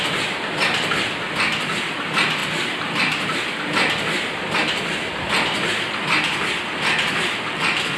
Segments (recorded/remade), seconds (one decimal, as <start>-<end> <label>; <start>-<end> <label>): 0.0-8.0 recorded